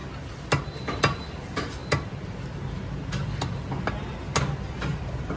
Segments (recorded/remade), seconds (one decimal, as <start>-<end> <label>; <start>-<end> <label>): 0.0-5.4 recorded